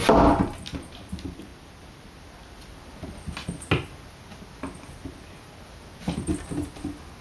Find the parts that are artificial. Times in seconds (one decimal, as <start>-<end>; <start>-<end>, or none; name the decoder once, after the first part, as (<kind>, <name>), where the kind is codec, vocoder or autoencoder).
none